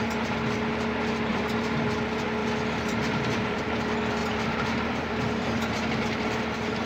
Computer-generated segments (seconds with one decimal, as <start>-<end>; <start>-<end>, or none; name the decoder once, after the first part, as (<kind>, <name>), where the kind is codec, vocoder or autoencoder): 1.3-2.0 (vocoder, BigVGAN v2); 2.4-3.6; 4.2-6.5

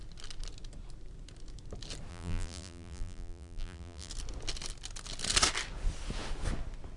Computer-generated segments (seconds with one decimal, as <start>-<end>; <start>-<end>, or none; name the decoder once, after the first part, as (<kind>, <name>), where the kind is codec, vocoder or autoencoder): 2.1-4.1 (vocoder, BigVGAN v2)

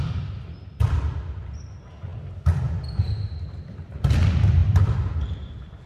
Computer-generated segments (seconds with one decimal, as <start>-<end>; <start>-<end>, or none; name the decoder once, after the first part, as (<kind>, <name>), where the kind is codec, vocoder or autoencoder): 2.1-2.8 (vocoder, BigVGAN v2); 4.6-5.2

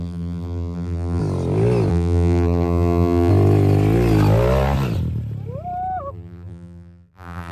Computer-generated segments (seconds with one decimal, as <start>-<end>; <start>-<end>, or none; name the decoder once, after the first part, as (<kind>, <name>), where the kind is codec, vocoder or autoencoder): 0.0-1.2 (vocoder, BigVGAN v2); 1.9-3.3; 6.1-7.5

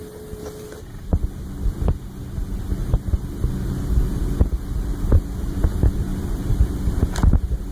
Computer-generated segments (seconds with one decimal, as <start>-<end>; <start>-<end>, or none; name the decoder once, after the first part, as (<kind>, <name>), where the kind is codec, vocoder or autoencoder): 6.1-7.7 (vocoder, BigVGAN v2)